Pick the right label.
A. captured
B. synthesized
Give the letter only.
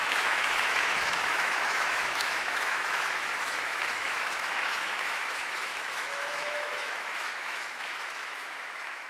B